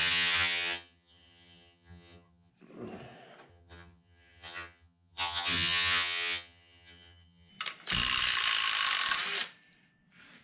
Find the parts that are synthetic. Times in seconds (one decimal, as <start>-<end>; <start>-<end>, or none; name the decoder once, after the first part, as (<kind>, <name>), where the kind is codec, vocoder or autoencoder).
0.0-2.5 (vocoder, HiFi-GAN); 3.5-7.5